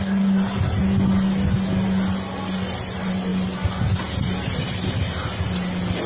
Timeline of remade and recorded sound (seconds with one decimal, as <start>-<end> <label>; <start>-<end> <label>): 0.0-6.1 recorded